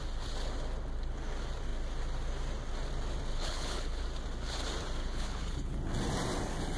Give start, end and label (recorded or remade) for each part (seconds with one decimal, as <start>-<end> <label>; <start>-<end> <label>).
0.0-3.3 recorded; 3.3-4.0 remade; 4.0-5.0 recorded; 5.0-5.7 remade; 5.7-6.8 recorded